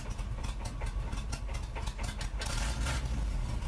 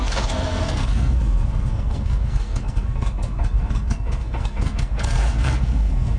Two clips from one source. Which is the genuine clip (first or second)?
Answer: first